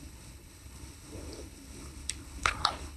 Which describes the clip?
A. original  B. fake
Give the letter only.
B